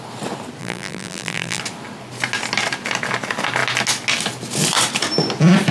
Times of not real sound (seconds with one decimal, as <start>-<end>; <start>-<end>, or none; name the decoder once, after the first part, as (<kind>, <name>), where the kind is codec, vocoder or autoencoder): 0.6-1.6 (vocoder, BigVGAN v2)

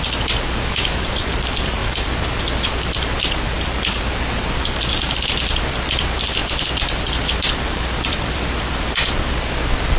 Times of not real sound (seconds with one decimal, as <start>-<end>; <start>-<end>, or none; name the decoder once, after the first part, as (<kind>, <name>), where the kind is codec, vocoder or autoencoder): 0.0-10.0 (vocoder, BigVGAN v2)